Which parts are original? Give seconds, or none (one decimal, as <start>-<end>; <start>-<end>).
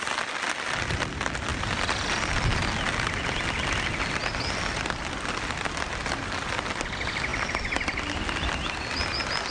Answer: 0.0-9.5